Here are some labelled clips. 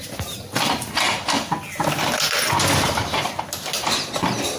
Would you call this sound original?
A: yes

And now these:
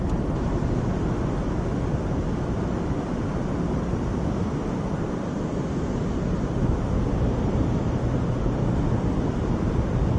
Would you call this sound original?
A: yes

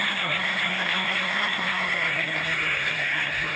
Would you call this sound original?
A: no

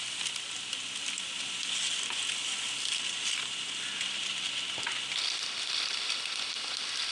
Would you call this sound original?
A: yes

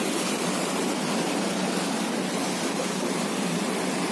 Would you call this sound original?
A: yes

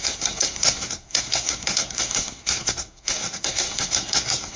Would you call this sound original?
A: no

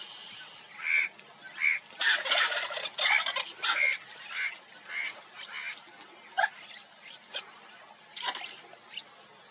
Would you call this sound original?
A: yes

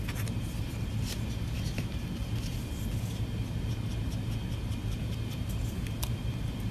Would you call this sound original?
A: yes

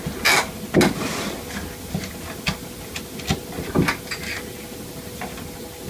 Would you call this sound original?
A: yes